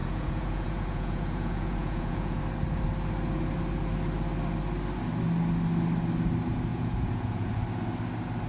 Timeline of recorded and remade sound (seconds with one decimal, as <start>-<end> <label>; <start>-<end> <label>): 0.0-2.4 remade; 2.4-6.7 recorded; 6.7-7.5 remade; 7.5-8.5 recorded